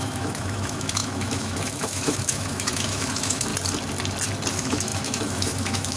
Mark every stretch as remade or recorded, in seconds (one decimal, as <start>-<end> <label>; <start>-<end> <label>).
0.0-3.5 remade; 3.5-4.5 recorded; 4.5-6.0 remade